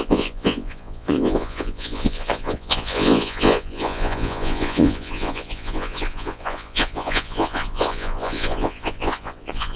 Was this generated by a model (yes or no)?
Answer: yes